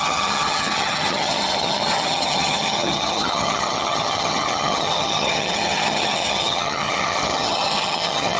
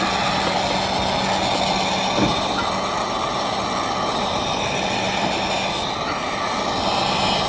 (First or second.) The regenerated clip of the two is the first